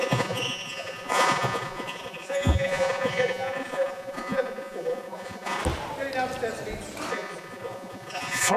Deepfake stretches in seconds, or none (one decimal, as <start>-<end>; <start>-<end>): 0.0-5.6; 7.1-8.6